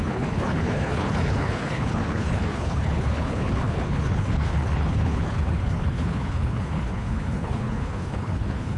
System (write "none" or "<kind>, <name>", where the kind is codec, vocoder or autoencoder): codec, HILCodec